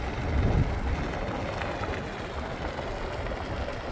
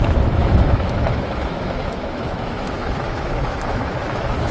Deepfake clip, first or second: second